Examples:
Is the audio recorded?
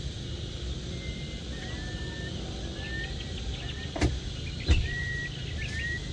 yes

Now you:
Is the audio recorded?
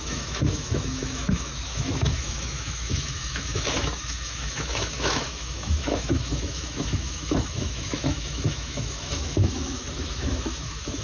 no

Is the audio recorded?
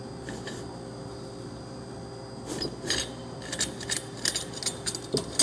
yes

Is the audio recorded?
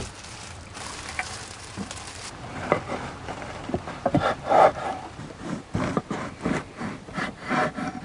no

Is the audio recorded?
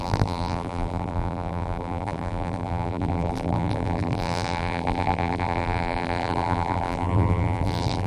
no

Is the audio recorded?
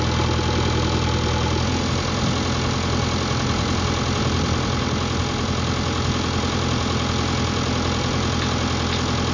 yes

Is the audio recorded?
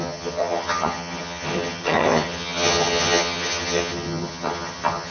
no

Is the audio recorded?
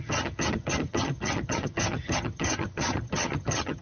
no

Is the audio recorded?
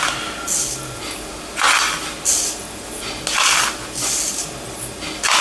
yes